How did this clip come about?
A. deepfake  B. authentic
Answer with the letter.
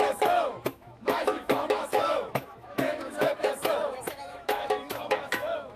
A